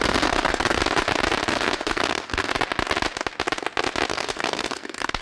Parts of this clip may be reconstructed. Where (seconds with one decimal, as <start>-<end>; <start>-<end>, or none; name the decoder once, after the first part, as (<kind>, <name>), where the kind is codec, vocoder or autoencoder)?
0.0-0.8 (codec, SNAC); 1.5-2.5; 4.1-5.2